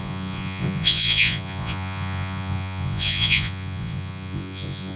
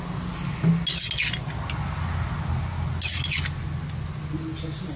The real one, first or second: second